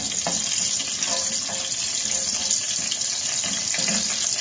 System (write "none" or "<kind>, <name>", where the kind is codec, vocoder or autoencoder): none